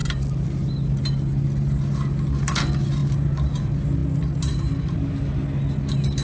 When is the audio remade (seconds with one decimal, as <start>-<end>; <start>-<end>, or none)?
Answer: none